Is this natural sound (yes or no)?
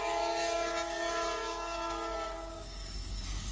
no